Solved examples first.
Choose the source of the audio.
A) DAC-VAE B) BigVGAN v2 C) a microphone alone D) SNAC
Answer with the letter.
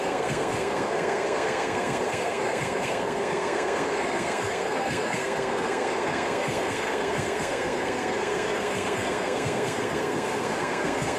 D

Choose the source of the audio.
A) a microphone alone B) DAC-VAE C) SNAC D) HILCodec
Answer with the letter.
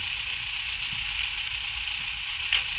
A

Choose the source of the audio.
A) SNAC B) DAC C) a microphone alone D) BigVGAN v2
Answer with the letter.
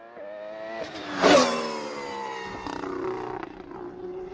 C